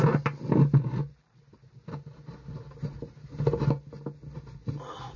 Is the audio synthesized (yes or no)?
no